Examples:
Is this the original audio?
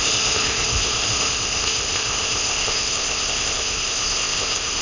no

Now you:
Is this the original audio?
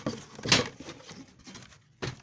yes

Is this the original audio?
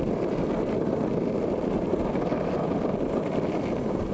yes